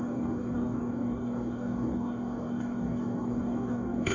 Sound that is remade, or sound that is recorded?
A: remade